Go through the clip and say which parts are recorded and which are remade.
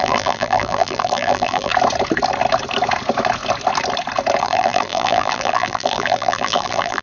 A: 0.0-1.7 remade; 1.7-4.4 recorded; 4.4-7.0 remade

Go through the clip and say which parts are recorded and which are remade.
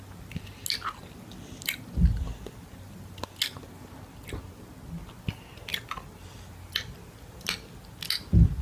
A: 0.0-8.6 recorded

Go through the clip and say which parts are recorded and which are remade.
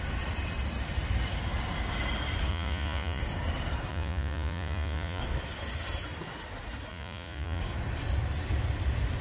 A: 0.0-2.5 recorded; 2.5-3.2 remade; 3.2-3.9 recorded; 3.9-5.2 remade; 5.2-6.9 recorded; 6.9-7.6 remade; 7.6-9.2 recorded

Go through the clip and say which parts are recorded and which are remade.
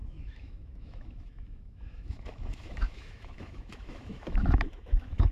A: 0.0-5.3 remade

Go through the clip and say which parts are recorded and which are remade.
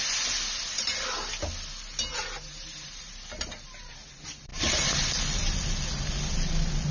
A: 0.0-2.1 recorded; 2.1-3.1 remade; 3.1-6.9 recorded